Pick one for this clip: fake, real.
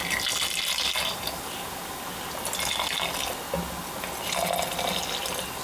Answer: real